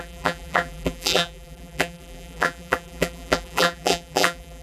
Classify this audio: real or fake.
fake